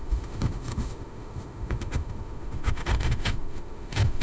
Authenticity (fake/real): fake